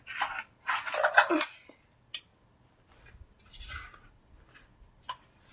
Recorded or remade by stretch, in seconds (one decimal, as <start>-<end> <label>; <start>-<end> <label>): 0.0-5.5 recorded